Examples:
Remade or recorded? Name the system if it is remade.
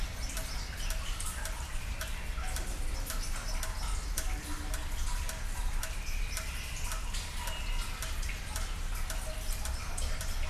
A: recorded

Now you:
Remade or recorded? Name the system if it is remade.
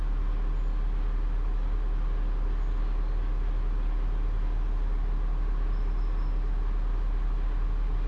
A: recorded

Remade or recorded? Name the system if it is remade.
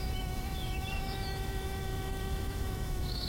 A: remade, autoencoder, DAC-VAE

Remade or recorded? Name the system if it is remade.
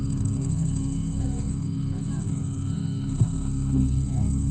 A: remade, codec, SNAC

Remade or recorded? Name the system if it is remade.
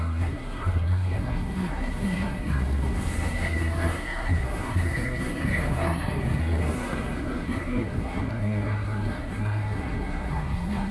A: remade, codec, SNAC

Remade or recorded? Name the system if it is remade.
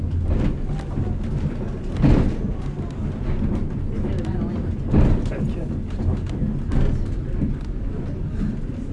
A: recorded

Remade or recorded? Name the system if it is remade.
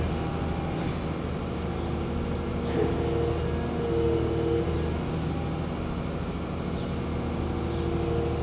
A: recorded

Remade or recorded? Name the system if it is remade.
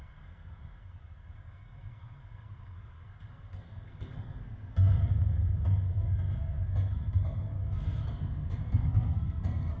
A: remade, codec, SNAC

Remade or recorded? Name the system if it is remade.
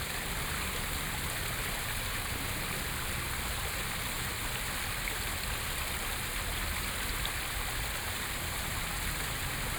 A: recorded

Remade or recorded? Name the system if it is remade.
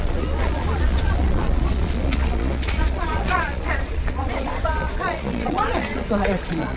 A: remade, vocoder, Vocos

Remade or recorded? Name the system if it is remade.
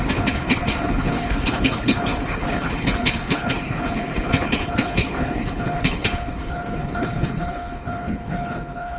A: remade, codec, HILCodec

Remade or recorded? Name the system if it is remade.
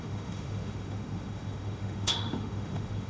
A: remade, autoencoder, DAC-VAE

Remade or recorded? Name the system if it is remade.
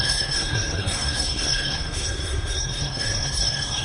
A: remade, codec, SNAC